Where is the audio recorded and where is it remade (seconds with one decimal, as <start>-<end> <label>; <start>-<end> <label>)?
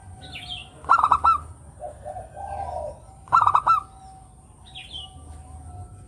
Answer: 0.0-6.1 recorded